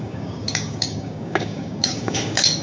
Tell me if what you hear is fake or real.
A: fake